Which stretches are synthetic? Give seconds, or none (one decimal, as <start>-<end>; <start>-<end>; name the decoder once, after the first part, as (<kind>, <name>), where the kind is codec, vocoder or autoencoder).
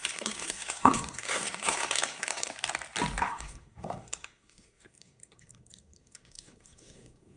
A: 0.0-2.5 (codec, SNAC); 3.2-7.4